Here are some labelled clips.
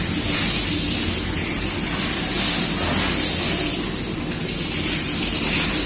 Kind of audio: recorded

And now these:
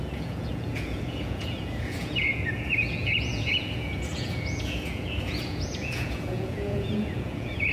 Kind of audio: remade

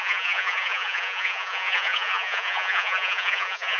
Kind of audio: remade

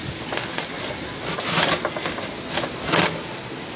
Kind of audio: recorded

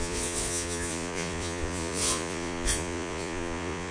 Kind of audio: remade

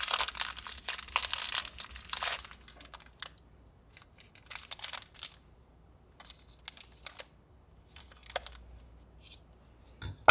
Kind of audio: recorded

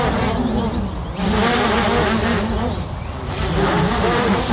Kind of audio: recorded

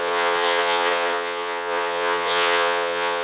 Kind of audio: remade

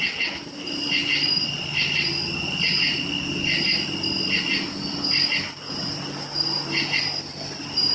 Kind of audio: recorded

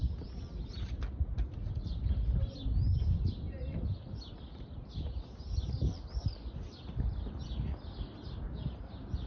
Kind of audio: recorded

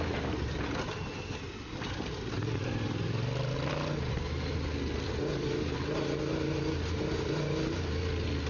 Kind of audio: recorded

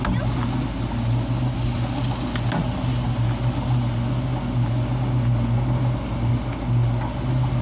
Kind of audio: recorded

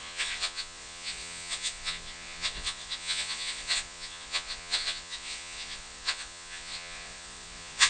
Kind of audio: remade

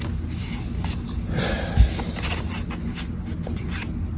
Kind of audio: recorded